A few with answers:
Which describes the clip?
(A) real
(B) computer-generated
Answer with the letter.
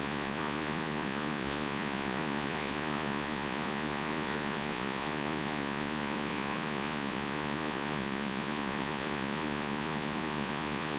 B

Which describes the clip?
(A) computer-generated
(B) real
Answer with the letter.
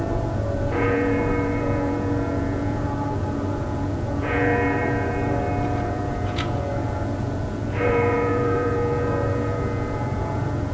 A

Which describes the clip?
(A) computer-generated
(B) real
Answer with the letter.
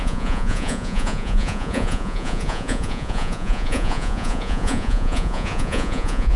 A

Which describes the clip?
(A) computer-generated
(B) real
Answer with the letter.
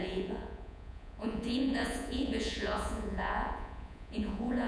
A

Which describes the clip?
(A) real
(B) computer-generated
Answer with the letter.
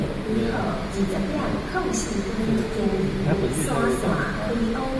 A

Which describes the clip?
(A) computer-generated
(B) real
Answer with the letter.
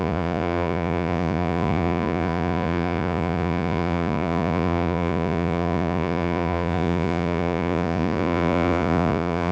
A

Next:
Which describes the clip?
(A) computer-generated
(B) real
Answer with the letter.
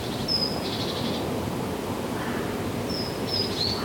B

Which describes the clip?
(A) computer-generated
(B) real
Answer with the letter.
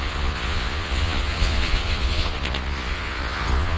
A